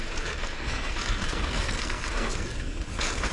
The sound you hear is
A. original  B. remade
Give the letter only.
B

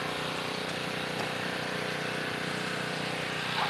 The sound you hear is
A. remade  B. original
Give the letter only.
B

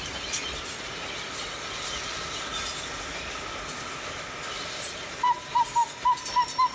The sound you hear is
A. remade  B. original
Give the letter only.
B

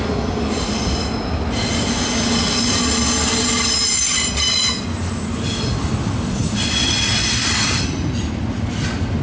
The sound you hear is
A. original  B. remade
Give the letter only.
A